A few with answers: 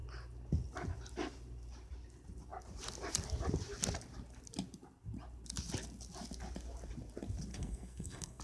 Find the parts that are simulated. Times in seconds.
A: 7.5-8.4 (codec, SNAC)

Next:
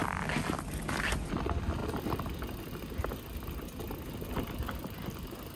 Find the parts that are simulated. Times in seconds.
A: none